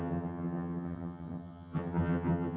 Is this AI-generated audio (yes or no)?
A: yes